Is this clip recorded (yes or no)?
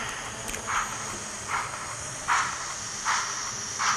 yes